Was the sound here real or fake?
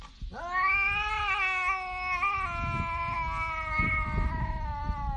real